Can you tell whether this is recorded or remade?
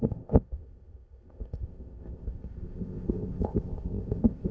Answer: remade